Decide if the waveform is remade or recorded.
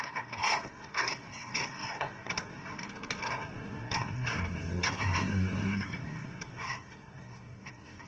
remade